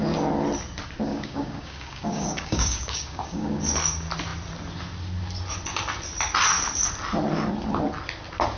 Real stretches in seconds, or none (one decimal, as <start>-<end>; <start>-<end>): 0.0-1.1; 3.6-8.6